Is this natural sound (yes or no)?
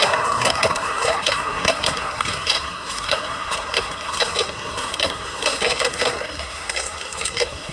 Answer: no